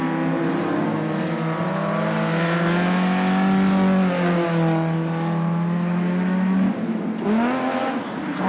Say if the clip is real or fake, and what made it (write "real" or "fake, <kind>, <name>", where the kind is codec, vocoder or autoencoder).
real